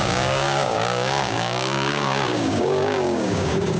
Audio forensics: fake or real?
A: fake